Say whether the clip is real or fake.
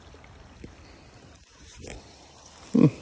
real